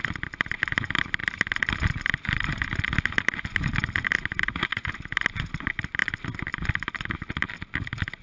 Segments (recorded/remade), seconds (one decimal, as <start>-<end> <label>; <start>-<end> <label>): 0.0-4.4 recorded; 4.4-4.9 remade; 4.9-8.2 recorded